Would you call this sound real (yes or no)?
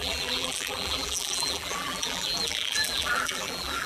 no